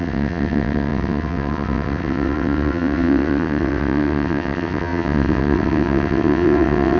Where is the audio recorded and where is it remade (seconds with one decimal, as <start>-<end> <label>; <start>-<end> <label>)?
0.0-7.0 remade

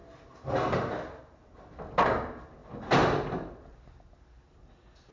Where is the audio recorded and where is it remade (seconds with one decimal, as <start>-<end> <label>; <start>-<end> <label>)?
0.0-5.1 recorded

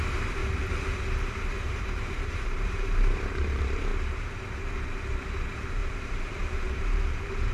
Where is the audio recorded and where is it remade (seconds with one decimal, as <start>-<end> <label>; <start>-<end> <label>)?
0.0-0.4 remade; 0.4-1.6 recorded; 1.6-3.9 remade; 3.9-5.1 recorded; 5.1-7.5 remade

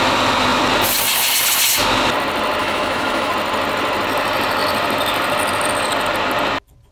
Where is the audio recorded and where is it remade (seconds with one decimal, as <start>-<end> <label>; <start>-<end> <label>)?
0.0-2.6 recorded; 2.6-3.3 remade; 3.3-6.9 recorded

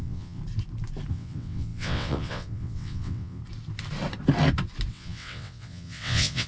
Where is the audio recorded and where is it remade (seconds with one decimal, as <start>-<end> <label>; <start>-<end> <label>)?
0.0-0.4 remade; 0.4-1.1 recorded; 1.1-3.4 remade; 3.4-4.9 recorded; 4.9-6.5 remade

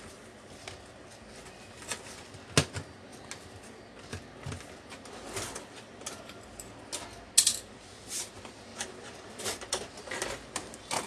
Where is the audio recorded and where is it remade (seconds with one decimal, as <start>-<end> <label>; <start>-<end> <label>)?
0.0-8.7 recorded; 8.7-9.6 remade; 9.6-11.1 recorded

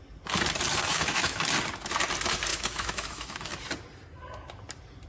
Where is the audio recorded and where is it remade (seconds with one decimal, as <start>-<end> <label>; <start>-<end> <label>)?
0.0-0.9 recorded; 0.9-1.4 remade; 1.4-2.5 recorded; 2.5-3.5 remade; 3.5-5.1 recorded

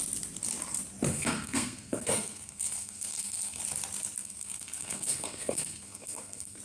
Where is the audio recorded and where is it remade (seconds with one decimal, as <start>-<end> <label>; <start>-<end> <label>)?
0.0-1.1 recorded; 1.1-3.6 remade; 3.6-4.2 recorded; 4.2-6.6 remade